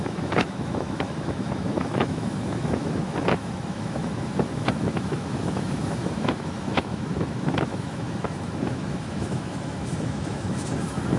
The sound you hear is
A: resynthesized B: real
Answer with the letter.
A